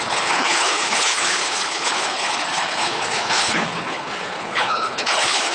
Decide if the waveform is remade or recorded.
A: remade